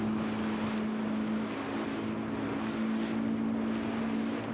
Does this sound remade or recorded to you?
recorded